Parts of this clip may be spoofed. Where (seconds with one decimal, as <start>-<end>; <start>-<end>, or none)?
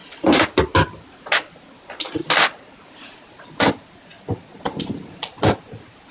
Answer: none